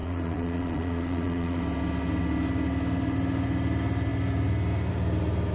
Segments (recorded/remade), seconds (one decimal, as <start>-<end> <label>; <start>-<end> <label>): 0.0-1.6 remade; 1.6-5.5 recorded